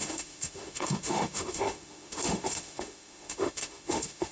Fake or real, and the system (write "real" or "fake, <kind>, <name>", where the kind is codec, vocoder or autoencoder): fake, autoencoder, DAC-VAE